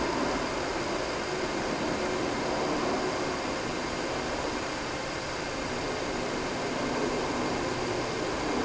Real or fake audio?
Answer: real